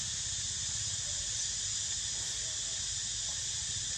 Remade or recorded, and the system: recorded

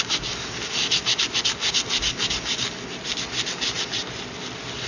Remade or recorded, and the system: recorded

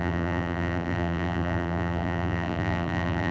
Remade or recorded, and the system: remade, vocoder, BigVGAN v2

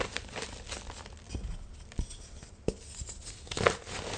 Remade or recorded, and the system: recorded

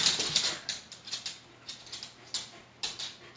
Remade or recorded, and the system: recorded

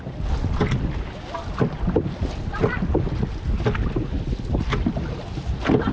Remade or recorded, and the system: recorded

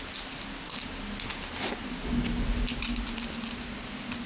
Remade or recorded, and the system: recorded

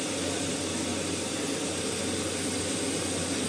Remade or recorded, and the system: recorded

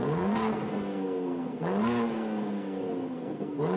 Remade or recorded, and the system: remade, codec, SNAC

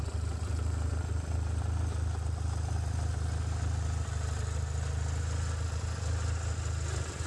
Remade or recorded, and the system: recorded